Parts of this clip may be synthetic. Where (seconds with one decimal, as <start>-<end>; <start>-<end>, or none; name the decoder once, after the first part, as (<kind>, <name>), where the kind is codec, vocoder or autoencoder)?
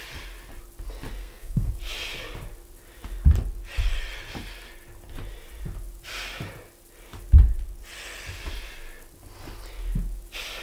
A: 1.2-1.7 (codec, SNAC)